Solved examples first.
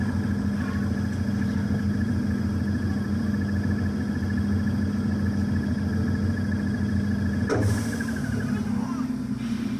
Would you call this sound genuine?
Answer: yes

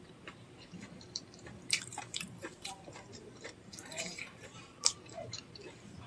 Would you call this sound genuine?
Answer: no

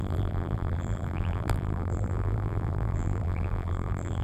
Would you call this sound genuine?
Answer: no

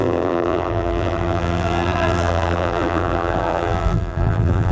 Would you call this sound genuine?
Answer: no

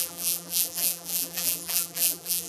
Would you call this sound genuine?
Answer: no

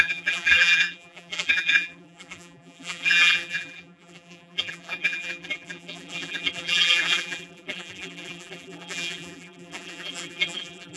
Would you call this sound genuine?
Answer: no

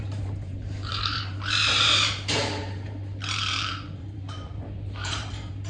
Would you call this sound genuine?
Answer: no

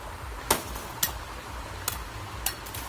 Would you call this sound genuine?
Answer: yes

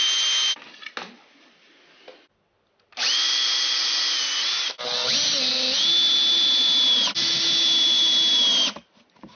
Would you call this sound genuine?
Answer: yes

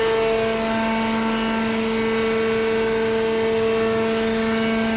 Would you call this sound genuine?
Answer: yes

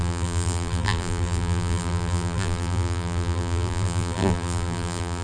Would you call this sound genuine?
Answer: no